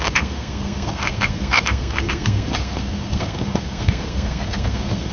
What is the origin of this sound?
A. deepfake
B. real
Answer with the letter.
A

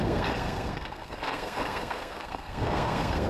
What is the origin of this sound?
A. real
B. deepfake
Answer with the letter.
B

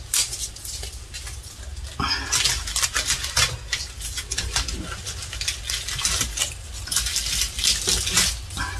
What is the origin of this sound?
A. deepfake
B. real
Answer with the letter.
B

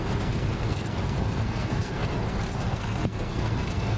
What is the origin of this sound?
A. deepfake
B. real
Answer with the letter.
A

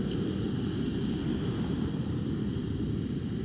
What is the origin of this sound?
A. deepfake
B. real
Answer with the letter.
B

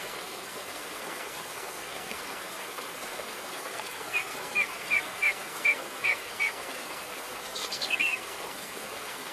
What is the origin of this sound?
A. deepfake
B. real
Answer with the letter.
A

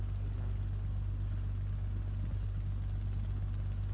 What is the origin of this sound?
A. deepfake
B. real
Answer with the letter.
B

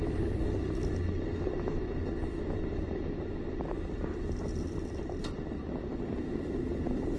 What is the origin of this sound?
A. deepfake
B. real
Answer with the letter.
B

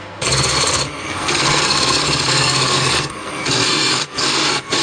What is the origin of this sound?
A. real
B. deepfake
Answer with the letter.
B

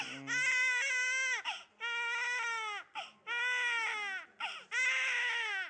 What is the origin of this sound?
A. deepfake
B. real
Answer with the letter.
B